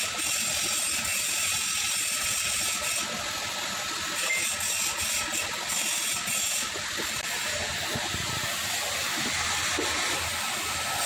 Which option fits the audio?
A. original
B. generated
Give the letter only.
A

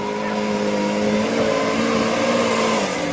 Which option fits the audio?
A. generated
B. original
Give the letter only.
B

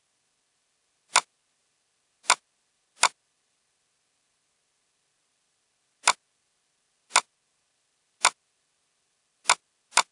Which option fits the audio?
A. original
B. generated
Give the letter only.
A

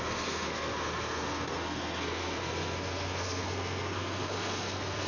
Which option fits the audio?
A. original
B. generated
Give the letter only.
B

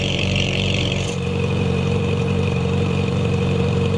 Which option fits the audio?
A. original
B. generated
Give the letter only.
B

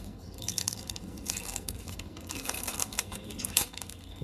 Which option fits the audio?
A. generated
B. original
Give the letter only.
A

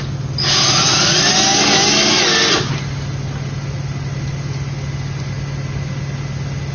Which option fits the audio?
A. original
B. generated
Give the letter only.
A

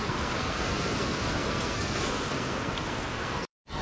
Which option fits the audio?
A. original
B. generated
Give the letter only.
B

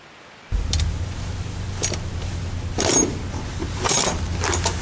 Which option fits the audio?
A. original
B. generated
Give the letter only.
A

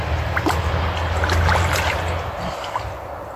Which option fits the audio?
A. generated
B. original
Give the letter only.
B